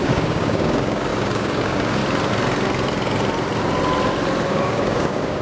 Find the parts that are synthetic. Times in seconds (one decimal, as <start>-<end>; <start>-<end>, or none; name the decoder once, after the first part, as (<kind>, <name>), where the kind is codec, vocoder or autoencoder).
0.0-2.0 (codec, DAC); 4.5-5.4